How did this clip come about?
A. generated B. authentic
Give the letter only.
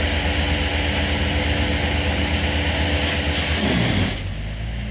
B